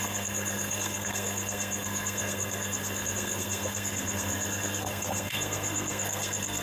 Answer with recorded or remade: remade